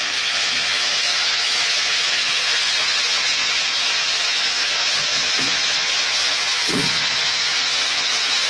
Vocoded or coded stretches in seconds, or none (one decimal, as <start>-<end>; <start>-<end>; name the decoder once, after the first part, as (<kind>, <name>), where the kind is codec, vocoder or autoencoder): 0.0-8.5 (vocoder, Vocos)